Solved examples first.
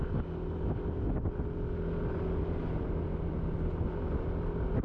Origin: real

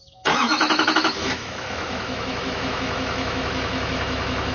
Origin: fake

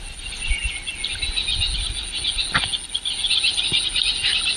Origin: real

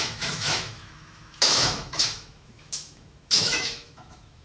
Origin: fake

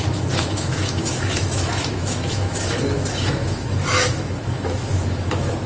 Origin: fake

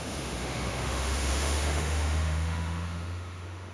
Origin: fake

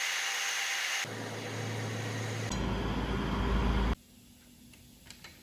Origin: real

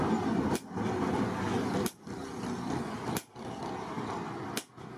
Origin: real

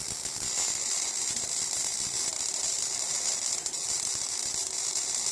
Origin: real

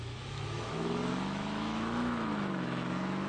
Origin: fake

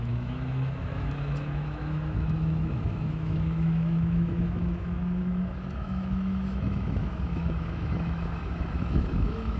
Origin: fake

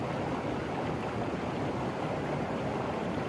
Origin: real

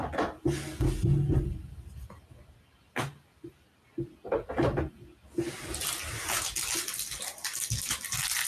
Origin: real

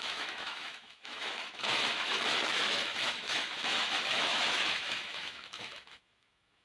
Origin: fake